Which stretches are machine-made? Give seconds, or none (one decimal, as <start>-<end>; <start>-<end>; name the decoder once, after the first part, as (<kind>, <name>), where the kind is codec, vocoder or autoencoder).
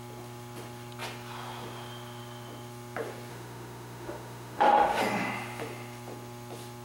3.3-5.0 (autoencoder, DAC-VAE)